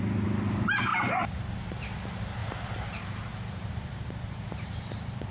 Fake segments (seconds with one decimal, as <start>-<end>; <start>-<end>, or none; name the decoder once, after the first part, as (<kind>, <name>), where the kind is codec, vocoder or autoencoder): 2.4-3.7 (vocoder, BigVGAN v2)